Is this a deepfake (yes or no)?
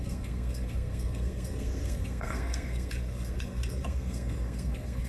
yes